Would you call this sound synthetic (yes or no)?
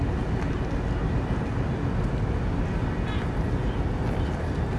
no